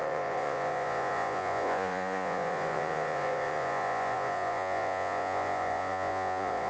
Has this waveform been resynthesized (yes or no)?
yes